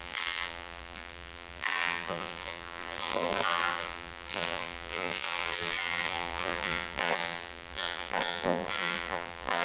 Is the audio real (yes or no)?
no